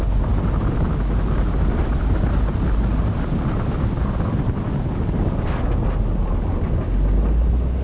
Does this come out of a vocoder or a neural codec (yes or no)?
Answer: no